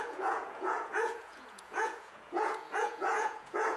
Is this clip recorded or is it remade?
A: remade